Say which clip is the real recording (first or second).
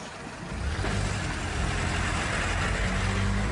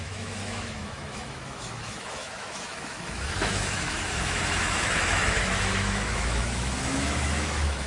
first